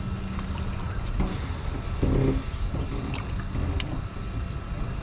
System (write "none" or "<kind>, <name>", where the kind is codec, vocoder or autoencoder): none